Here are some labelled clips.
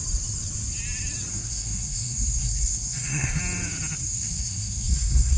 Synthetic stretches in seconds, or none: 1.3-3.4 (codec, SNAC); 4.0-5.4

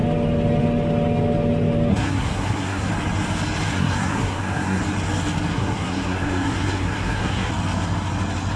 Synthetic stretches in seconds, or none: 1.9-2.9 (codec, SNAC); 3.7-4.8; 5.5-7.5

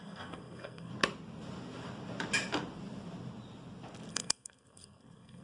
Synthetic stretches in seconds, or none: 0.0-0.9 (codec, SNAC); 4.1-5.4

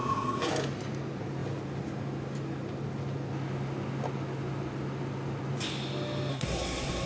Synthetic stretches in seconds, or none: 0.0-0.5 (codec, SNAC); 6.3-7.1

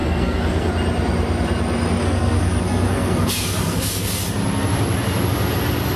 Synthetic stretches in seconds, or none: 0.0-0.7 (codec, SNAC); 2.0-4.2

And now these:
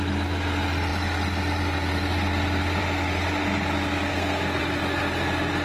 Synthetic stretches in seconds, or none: 4.1-4.6 (codec, SNAC)